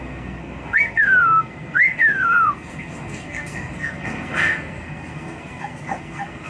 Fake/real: fake